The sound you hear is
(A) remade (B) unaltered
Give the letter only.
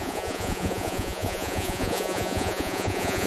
A